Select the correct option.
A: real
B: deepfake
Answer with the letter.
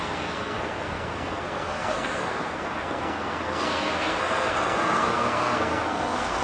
B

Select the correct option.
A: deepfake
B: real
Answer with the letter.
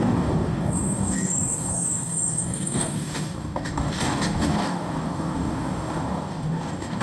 A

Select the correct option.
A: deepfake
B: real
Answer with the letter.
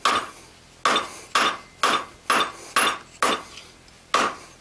B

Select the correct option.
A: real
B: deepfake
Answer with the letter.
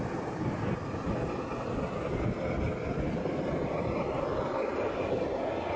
A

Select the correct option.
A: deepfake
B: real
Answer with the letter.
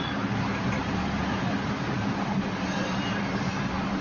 B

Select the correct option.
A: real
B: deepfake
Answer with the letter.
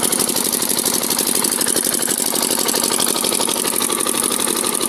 A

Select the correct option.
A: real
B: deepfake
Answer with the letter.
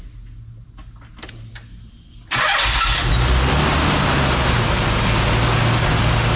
A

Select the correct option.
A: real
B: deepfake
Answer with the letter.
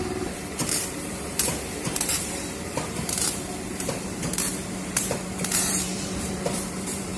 B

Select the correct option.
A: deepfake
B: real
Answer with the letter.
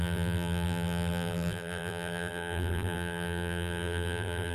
A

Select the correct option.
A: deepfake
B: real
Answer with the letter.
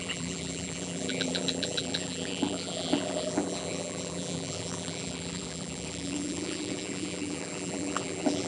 A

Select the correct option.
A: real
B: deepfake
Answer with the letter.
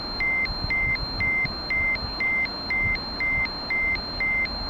A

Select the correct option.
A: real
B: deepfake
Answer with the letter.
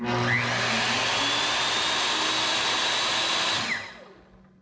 A